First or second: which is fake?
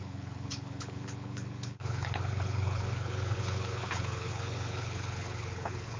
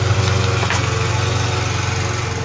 first